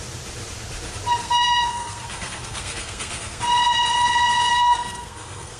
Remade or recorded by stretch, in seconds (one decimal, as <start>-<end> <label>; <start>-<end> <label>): 0.0-1.2 recorded; 1.2-3.4 remade; 3.4-4.5 recorded; 4.5-5.6 remade